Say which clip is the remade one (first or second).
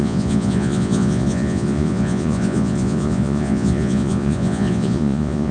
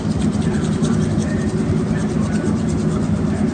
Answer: first